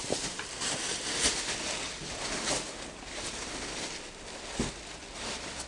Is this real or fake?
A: real